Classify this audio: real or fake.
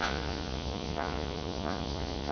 fake